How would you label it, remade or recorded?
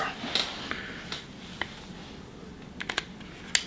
recorded